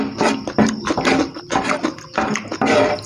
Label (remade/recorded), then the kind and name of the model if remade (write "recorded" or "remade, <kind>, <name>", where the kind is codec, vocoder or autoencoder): recorded